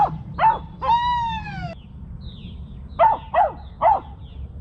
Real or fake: real